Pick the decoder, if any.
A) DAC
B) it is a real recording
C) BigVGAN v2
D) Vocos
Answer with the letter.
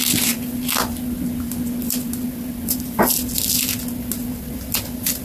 B